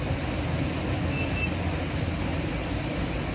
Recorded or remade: recorded